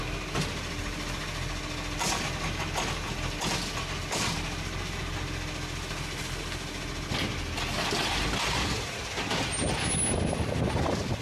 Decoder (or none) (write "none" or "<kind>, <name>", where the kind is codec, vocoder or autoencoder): none